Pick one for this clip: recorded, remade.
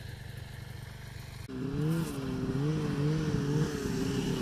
recorded